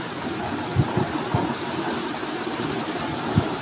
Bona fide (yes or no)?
no